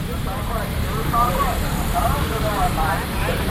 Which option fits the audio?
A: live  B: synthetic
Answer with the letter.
B